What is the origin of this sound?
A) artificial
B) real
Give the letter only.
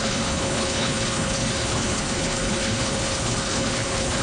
A